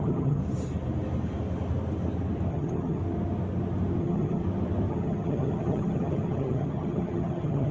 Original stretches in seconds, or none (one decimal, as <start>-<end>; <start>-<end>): 0.4-2.5; 3.0-4.0; 4.4-4.9